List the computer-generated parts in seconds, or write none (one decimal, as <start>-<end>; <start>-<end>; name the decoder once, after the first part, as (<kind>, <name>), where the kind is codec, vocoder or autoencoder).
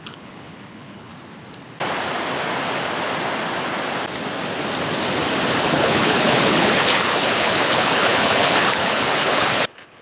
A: 0.0-1.1 (codec, HILCodec); 5.6-10.0